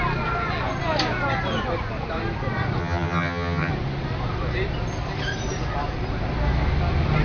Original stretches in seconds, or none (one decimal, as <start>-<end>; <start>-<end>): 0.0-2.8; 3.7-7.2